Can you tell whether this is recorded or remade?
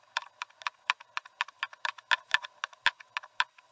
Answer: recorded